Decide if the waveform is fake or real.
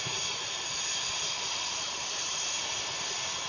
real